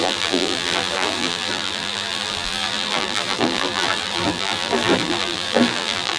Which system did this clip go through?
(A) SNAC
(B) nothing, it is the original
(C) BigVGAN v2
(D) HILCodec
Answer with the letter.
C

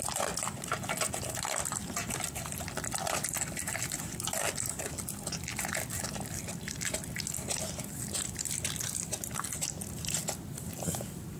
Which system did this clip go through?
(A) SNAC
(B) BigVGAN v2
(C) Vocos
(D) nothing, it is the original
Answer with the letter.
D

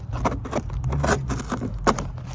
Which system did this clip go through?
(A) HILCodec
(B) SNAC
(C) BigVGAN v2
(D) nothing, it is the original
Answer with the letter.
D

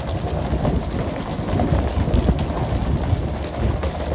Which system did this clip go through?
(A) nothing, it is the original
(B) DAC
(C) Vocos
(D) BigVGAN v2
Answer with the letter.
A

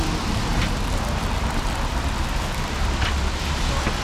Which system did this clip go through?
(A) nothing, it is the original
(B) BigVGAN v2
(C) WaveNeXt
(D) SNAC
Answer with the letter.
B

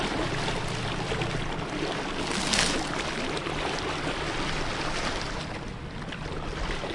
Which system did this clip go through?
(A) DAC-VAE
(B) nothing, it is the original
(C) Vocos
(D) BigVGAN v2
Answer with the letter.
B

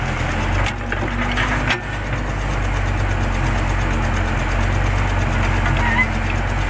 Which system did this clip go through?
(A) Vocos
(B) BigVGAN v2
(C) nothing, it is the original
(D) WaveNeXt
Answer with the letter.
C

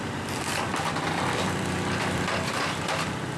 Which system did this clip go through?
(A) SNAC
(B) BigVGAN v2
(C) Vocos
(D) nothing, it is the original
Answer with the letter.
B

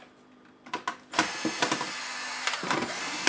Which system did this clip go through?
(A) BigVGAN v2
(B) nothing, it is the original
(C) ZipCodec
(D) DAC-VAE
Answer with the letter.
B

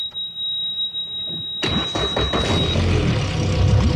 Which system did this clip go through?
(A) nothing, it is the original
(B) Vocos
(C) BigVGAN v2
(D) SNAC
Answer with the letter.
A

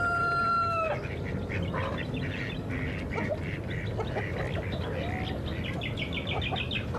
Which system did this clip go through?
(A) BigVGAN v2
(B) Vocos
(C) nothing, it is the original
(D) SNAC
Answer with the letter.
C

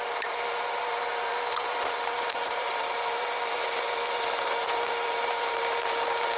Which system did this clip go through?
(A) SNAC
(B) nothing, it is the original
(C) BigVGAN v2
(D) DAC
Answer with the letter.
C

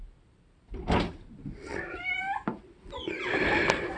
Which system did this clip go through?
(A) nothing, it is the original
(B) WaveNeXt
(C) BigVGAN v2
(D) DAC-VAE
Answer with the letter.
C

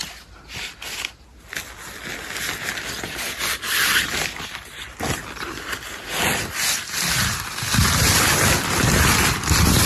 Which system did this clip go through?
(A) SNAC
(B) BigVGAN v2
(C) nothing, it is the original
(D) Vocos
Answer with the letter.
C